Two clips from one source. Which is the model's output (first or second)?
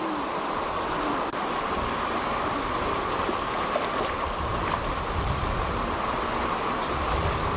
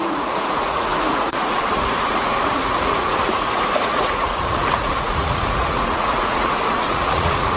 second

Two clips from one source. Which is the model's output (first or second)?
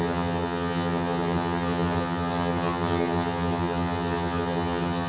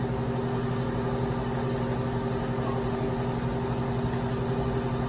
first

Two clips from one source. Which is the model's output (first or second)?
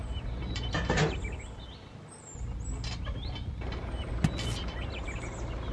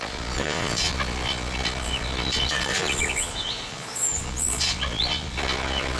second